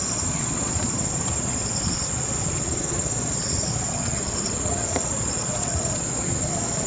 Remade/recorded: remade